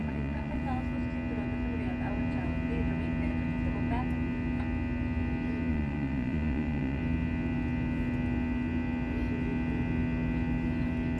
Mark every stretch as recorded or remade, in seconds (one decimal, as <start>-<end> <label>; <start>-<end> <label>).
0.0-0.6 remade; 0.6-5.7 recorded; 5.7-7.0 remade; 7.0-11.2 recorded